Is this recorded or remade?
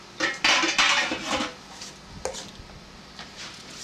recorded